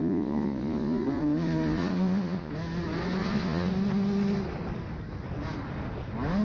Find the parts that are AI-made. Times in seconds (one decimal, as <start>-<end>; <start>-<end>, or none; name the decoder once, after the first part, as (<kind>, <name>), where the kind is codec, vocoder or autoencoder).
0.0-2.5 (vocoder, Vocos); 3.2-3.7